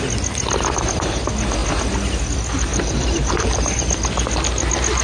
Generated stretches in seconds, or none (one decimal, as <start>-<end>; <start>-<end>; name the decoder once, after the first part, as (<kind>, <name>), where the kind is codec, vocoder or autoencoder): 2.7-3.8 (vocoder, BigVGAN v2)